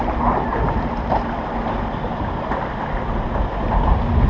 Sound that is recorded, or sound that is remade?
remade